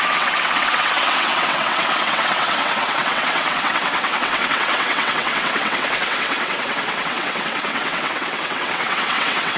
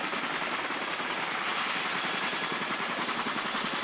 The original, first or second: second